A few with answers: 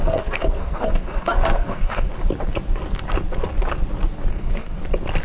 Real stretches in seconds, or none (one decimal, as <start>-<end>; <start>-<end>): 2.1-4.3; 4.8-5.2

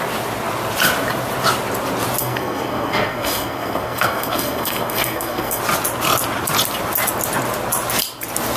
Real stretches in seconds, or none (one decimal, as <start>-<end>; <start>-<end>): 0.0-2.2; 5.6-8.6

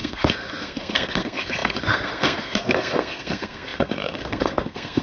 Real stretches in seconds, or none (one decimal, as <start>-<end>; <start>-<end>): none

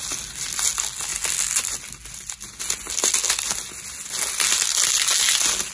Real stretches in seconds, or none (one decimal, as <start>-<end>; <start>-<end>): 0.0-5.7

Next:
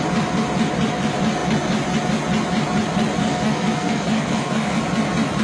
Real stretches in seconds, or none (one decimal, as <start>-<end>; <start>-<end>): 0.0-3.2; 4.8-5.4